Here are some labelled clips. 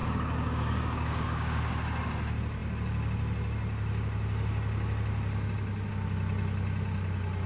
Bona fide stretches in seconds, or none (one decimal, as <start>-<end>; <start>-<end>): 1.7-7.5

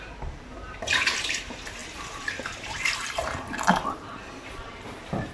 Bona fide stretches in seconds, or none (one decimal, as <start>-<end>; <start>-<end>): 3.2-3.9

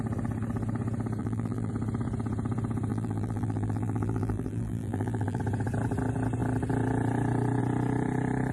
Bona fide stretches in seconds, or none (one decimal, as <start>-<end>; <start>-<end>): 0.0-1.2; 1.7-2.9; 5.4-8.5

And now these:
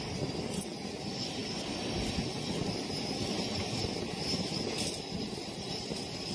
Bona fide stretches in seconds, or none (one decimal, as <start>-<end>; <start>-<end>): 0.0-6.3

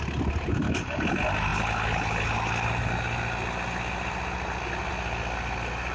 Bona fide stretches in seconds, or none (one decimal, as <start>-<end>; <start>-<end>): 0.0-5.9